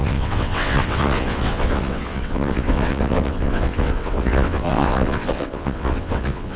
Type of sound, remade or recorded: remade